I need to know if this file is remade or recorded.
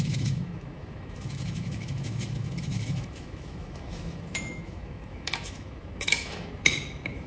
remade